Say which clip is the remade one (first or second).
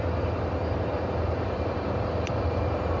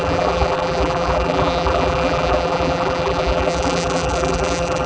second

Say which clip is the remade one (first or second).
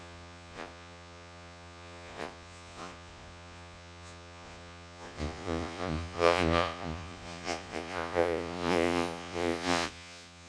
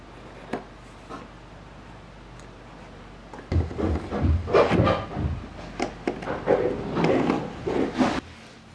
first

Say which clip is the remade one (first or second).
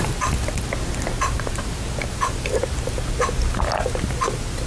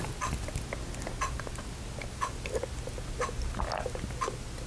first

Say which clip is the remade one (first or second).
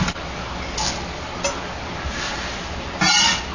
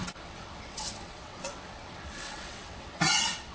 second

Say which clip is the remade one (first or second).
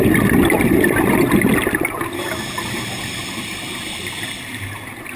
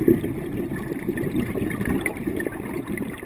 second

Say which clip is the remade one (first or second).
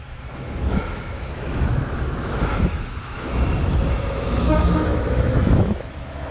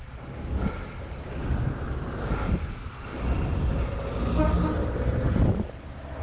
first